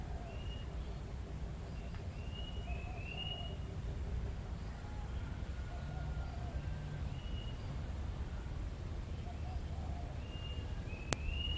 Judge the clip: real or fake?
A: real